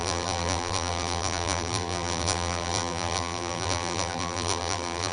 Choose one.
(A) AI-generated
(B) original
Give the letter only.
A